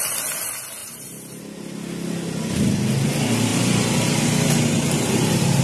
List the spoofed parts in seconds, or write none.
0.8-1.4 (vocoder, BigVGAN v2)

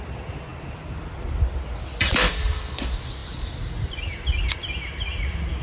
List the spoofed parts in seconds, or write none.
none

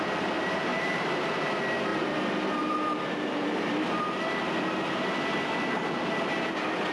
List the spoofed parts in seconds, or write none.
0.7-1.3 (vocoder, BigVGAN v2); 1.9-3.9

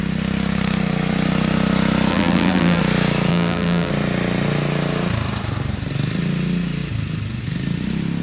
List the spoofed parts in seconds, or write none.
2.1-2.8 (vocoder, BigVGAN v2); 3.3-3.9

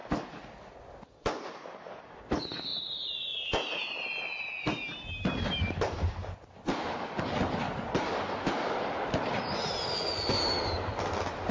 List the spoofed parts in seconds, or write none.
none

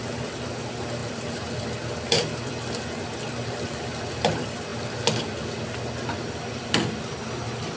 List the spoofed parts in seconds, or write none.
0.0-4.7 (vocoder, BigVGAN v2); 6.5-7.8

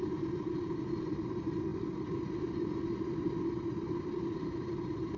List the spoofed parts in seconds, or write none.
none